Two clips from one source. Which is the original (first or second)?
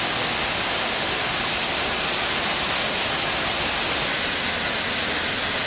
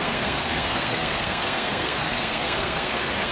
first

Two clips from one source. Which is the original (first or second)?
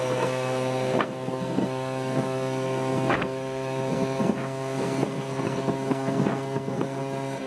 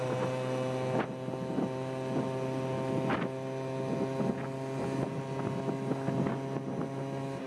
second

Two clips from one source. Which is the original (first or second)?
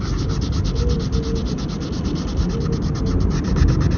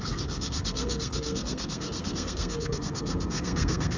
first